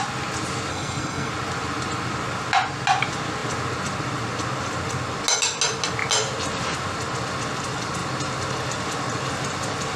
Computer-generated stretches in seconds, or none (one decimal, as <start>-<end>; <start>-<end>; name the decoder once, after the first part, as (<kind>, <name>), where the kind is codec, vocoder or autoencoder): 0.7-1.3 (codec, SNAC)